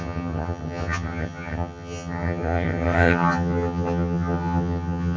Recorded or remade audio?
remade